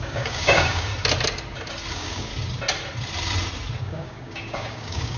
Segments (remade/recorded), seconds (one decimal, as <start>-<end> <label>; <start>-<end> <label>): 0.0-0.9 remade; 0.9-1.9 recorded; 1.9-2.3 remade; 2.3-3.8 recorded; 3.8-5.2 remade